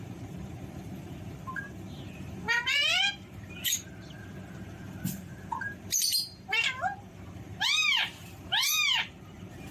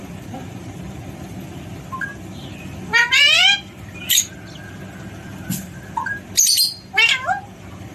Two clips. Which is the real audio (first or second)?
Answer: second